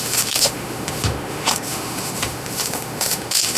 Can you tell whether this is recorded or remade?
remade